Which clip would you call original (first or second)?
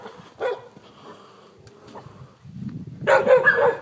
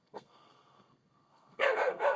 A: first